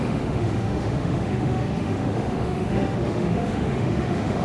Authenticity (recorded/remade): remade